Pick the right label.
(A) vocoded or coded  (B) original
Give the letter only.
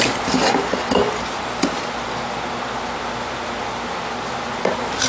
B